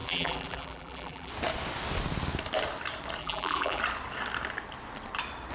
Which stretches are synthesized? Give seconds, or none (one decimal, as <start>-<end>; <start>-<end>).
0.0-1.3; 3.2-3.8